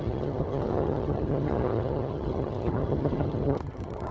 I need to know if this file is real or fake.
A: fake